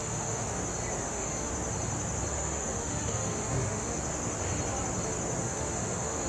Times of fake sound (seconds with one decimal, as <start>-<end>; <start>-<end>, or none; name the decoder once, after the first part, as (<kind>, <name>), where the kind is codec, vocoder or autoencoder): 0.0-0.6 (autoencoder, DAC-VAE); 1.0-1.5; 2.3-4.0; 5.4-6.3